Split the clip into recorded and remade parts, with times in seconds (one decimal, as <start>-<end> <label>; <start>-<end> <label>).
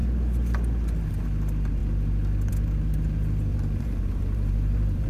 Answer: 0.0-3.5 recorded; 3.5-5.1 remade